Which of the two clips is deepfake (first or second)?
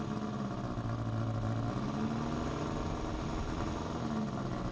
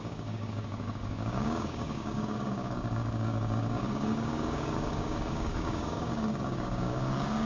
second